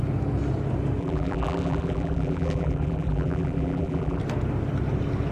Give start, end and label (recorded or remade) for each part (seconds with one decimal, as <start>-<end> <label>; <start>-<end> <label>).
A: 0.0-1.0 recorded; 1.0-4.2 remade; 4.2-5.3 recorded